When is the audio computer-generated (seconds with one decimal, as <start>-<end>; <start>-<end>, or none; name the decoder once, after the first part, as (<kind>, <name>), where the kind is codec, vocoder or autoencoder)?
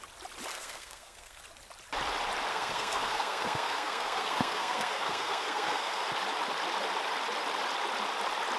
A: 0.5-1.4 (codec, SNAC); 2.5-6.1